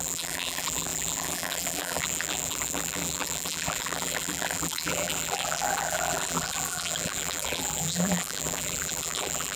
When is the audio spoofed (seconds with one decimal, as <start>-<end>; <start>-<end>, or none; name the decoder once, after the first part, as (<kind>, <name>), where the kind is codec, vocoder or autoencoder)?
0.0-9.6 (vocoder, BigVGAN v2)